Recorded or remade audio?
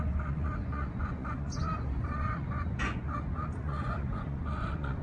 remade